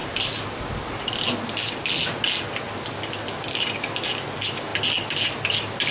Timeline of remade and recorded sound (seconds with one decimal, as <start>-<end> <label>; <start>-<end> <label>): 0.0-5.9 recorded

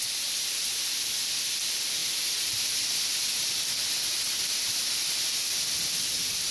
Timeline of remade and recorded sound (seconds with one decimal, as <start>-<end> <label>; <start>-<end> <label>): 0.0-6.5 recorded

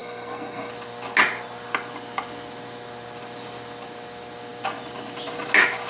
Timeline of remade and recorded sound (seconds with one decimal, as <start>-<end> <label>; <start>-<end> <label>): 0.0-0.7 remade; 0.7-5.9 recorded

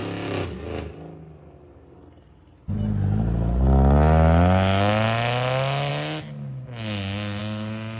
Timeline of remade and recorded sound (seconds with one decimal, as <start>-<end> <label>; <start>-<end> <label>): 0.0-8.0 recorded

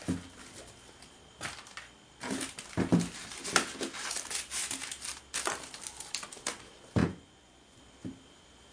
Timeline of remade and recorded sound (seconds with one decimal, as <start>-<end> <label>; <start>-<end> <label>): 0.0-7.0 recorded; 7.0-7.8 remade; 7.8-8.7 recorded

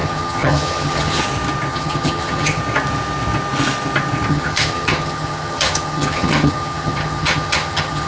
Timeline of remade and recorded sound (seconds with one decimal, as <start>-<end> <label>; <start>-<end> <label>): 0.0-1.2 remade; 1.2-1.7 recorded; 1.7-2.6 remade; 2.6-4.3 recorded; 4.3-8.1 remade

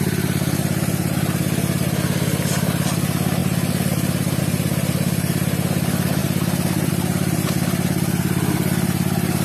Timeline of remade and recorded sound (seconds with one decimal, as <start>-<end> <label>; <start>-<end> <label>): 0.0-9.4 recorded

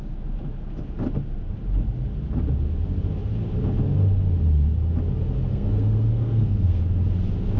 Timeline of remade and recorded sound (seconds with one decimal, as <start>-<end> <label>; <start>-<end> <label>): 0.0-5.5 recorded; 5.5-6.8 remade; 6.8-7.6 recorded